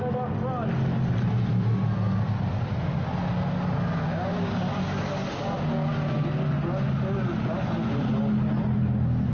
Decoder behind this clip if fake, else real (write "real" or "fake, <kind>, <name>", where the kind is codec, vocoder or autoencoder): real